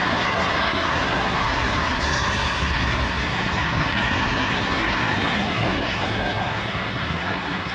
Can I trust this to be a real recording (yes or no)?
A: no